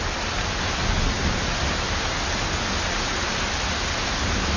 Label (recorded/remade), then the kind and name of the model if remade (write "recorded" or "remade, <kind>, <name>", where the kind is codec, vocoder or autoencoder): recorded